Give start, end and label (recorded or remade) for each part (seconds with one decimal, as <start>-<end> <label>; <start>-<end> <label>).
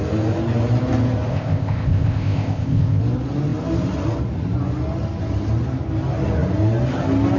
0.0-1.3 recorded; 1.3-3.0 remade; 3.0-7.4 recorded